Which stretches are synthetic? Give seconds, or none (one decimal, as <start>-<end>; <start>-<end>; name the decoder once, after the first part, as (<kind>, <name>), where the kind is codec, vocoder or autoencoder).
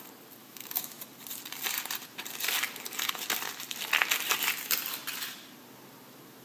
0.4-1.0 (autoencoder, DAC-VAE)